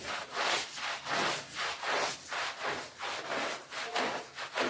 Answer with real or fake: real